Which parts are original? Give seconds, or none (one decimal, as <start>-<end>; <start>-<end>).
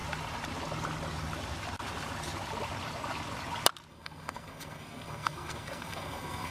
0.0-3.9